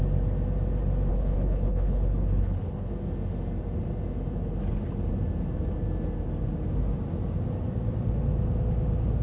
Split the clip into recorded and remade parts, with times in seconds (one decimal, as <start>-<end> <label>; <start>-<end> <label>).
0.0-1.1 recorded; 1.1-2.9 remade; 2.9-9.2 recorded